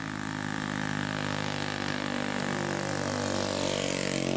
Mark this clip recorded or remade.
recorded